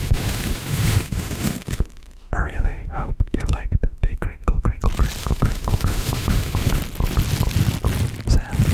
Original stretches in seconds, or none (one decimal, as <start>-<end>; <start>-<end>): 4.8-5.2; 6.8-8.7